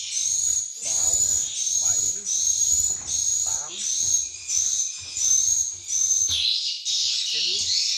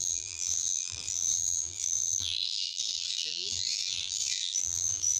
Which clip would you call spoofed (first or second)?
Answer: second